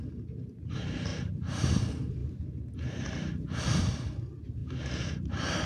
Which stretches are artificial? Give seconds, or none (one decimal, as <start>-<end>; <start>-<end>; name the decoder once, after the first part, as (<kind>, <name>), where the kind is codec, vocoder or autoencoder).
0.0-2.2 (vocoder, BigVGAN v2); 3.8-5.7